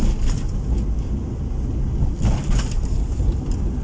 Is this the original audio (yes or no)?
yes